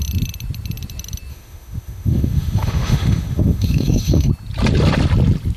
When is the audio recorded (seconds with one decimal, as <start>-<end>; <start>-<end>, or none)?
0.0-1.3; 4.3-5.6